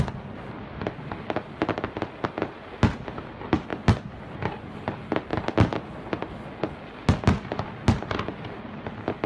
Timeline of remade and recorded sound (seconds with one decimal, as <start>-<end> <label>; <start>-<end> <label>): 0.0-9.3 recorded